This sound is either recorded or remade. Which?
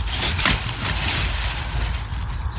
remade